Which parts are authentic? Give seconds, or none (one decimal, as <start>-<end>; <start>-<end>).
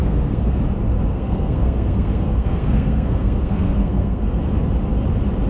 0.6-1.1; 4.4-5.5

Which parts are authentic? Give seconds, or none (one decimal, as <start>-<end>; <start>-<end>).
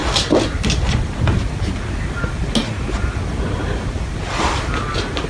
0.0-5.3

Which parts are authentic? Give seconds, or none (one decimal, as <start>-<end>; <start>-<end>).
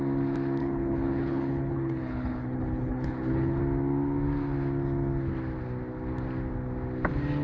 0.0-0.6; 3.6-7.4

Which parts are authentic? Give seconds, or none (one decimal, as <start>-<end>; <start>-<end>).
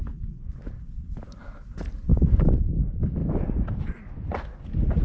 0.0-3.2; 3.8-5.0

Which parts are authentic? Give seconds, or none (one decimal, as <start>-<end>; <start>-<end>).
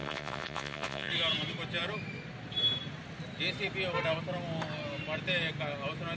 1.1-6.2